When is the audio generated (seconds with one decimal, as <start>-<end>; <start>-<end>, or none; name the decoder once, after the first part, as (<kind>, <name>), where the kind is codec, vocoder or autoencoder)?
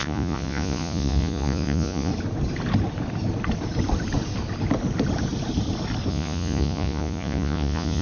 0.0-2.1 (vocoder, Vocos); 6.1-8.0